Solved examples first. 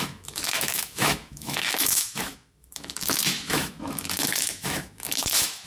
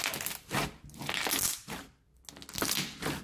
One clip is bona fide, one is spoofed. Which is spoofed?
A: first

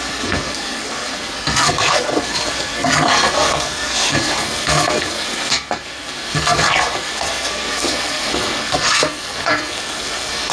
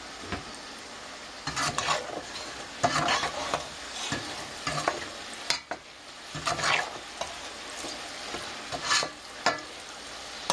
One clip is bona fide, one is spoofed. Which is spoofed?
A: first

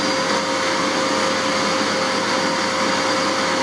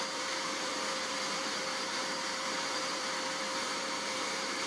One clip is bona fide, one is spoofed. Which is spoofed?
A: second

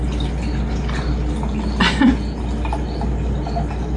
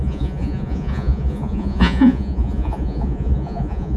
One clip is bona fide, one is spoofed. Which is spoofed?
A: second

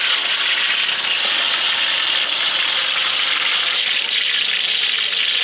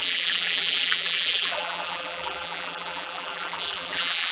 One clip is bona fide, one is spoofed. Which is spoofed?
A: second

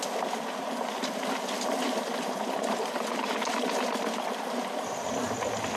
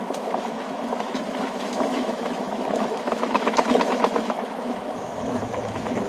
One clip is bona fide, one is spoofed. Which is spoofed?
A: second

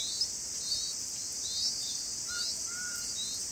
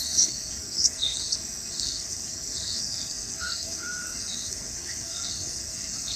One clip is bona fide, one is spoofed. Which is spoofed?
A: second